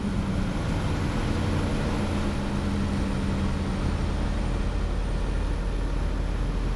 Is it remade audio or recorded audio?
recorded